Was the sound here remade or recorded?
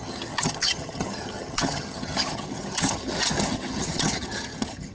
remade